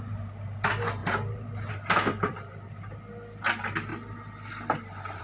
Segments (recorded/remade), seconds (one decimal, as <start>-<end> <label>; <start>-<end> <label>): 0.0-5.2 recorded